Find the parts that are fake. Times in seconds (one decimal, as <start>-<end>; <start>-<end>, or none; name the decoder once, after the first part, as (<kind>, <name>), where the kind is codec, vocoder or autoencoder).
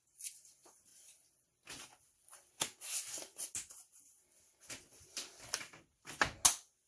none